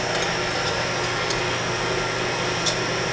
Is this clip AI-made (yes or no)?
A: no